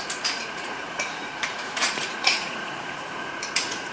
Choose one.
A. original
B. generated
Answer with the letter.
B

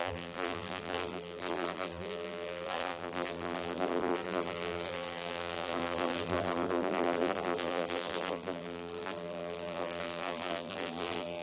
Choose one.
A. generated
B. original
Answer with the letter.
A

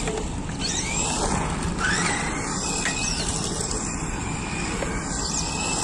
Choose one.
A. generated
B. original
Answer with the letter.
B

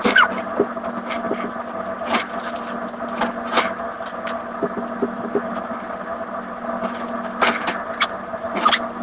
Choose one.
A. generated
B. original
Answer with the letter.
B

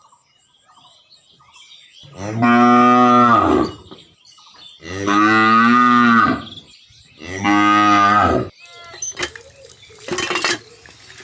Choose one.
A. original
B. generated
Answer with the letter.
A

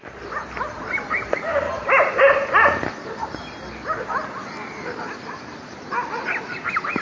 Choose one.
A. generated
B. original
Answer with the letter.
B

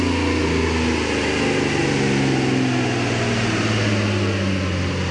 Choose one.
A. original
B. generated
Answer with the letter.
A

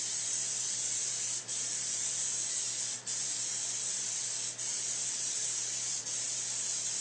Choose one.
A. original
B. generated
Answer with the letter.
A